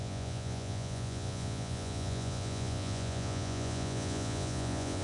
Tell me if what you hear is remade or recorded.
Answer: remade